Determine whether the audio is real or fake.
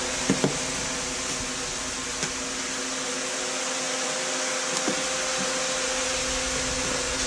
real